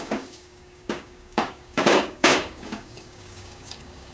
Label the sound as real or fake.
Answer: fake